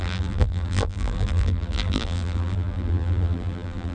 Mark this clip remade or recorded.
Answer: remade